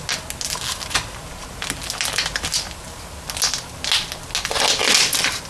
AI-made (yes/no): no